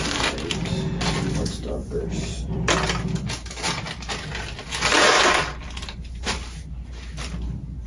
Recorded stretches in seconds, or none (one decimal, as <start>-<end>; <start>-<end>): 0.0-1.8; 2.7-7.9